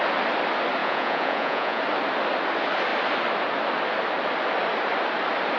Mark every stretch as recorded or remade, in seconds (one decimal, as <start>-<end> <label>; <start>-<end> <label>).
0.0-0.8 recorded; 0.8-1.8 remade; 1.8-5.6 recorded